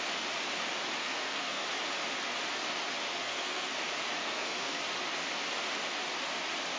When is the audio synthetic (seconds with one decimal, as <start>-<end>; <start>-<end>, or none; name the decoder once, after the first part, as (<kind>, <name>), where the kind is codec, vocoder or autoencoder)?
1.0-1.6 (codec, SNAC); 3.1-3.7; 4.2-4.8